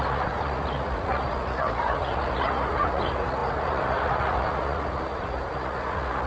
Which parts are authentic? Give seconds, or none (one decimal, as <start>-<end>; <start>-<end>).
none